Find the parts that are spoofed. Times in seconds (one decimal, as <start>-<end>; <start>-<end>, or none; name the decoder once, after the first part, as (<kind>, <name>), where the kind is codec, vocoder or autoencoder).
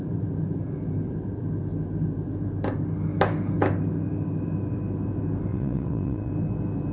5.5-6.3 (vocoder, WaveNeXt)